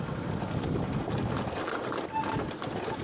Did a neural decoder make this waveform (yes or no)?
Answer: no